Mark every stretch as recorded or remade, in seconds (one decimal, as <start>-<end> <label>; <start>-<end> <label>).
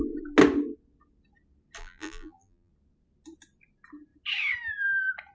0.0-1.8 recorded; 1.8-2.7 remade; 2.7-5.3 recorded